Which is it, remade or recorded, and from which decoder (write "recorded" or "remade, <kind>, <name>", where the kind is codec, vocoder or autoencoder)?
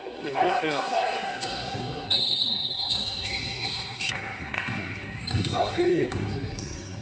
remade, codec, SNAC